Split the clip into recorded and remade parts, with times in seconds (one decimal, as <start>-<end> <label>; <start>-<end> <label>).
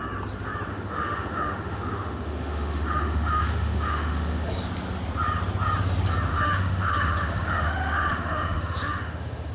0.0-0.7 recorded; 0.7-4.5 remade; 4.5-6.3 recorded; 6.3-9.5 remade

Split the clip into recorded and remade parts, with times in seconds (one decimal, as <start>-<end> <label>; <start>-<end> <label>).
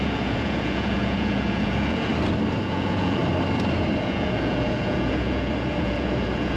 0.0-2.1 remade; 2.1-2.6 recorded; 2.6-3.2 remade; 3.2-4.0 recorded; 4.0-6.6 remade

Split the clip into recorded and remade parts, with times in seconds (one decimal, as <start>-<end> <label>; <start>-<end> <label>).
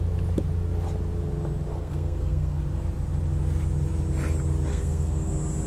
0.0-1.7 recorded; 1.7-2.6 remade; 2.6-4.7 recorded; 4.7-5.3 remade; 5.3-5.7 recorded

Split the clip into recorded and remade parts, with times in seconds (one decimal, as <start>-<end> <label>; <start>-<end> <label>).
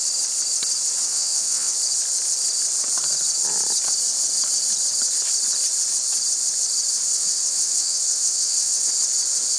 0.0-1.1 recorded; 1.1-1.7 remade; 1.7-7.1 recorded; 7.1-8.9 remade; 8.9-9.6 recorded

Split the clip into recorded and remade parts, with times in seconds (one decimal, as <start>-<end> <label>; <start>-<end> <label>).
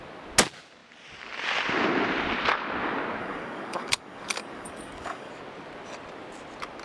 0.0-3.2 recorded; 3.2-5.3 remade; 5.3-6.8 recorded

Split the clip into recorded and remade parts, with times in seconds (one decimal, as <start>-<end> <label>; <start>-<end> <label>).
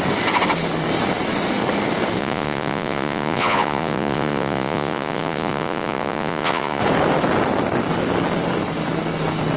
0.0-2.2 recorded; 2.2-6.8 remade; 6.8-9.6 recorded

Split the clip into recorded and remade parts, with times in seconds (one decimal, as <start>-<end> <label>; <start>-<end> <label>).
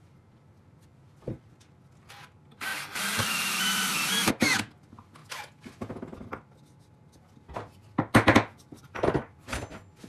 0.0-2.7 recorded; 2.7-4.3 remade; 4.3-10.1 recorded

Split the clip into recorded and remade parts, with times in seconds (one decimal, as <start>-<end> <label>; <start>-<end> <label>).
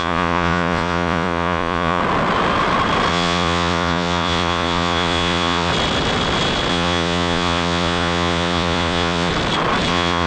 0.0-2.0 remade; 2.0-3.1 recorded; 3.1-5.7 remade; 5.7-6.7 recorded; 6.7-9.3 remade; 9.3-9.9 recorded; 9.9-10.3 remade